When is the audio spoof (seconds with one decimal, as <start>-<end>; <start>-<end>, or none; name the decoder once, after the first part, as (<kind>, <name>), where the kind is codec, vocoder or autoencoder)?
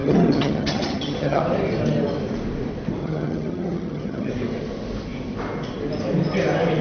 0.0-1.4 (vocoder, HiFi-GAN); 3.0-4.3